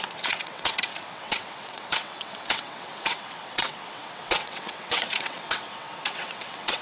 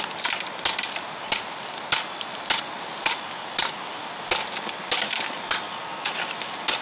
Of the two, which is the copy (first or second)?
first